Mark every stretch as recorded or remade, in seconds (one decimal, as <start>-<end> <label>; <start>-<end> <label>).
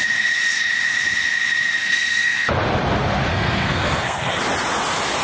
0.0-1.8 recorded; 1.8-2.5 remade; 2.5-3.3 recorded; 3.3-4.4 remade; 4.4-5.2 recorded